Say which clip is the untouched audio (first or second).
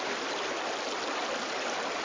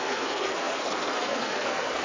first